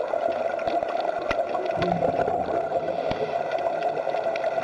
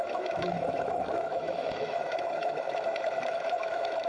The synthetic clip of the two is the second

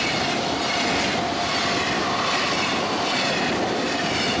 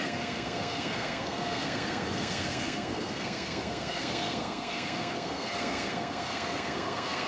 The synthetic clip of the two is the second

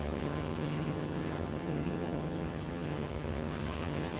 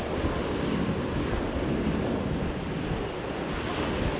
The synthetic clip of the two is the first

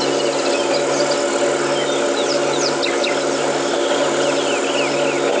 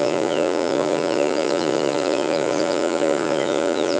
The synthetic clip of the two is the second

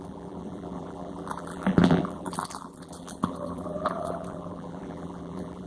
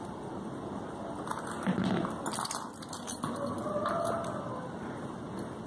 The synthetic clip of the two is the first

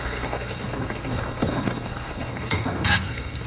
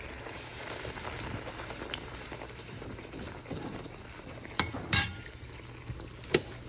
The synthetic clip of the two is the first